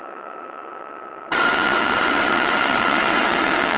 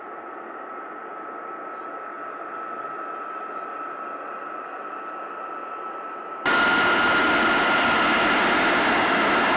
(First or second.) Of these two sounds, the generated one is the first